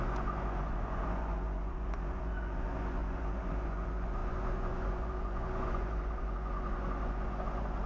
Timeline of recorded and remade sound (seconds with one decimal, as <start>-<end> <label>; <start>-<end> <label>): 0.0-7.9 remade